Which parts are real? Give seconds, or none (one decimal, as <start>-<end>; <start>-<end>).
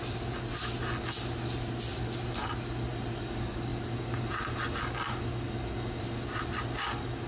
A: 0.0-7.3